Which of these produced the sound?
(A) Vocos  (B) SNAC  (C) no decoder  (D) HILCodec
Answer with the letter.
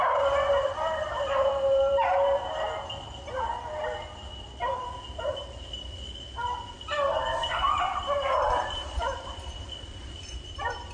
C